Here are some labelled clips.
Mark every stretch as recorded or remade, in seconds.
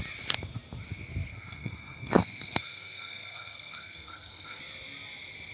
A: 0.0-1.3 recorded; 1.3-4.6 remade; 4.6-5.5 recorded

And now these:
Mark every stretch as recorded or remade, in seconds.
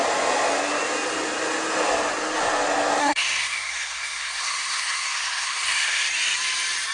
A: 0.0-3.0 recorded; 3.0-6.1 remade; 6.1-6.9 recorded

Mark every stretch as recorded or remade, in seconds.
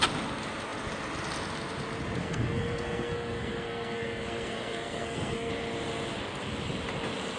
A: 0.0-2.2 recorded; 2.2-5.5 remade; 5.5-7.4 recorded